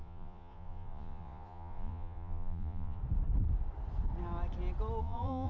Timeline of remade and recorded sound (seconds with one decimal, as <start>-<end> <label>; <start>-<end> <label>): 0.0-3.0 remade; 3.0-5.0 recorded; 5.0-5.5 remade